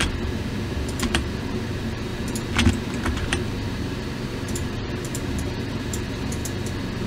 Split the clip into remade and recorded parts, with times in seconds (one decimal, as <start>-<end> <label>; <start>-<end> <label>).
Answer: 0.0-2.1 remade; 2.1-2.7 recorded; 2.7-6.4 remade; 6.4-7.1 recorded